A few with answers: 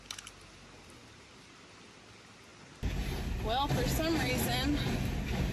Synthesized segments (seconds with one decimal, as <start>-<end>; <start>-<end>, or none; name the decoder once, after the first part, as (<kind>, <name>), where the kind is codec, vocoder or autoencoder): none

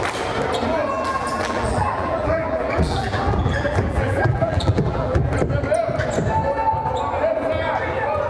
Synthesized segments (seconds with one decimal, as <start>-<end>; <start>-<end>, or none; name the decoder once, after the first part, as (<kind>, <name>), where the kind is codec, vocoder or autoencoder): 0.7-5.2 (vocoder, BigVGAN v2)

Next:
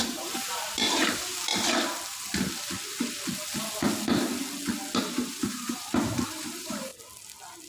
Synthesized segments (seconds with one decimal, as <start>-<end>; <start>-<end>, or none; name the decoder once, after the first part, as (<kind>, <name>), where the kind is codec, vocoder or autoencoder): 0.0-1.5 (vocoder, BigVGAN v2); 5.0-6.9